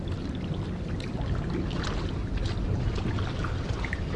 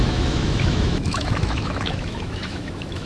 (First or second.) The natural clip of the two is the first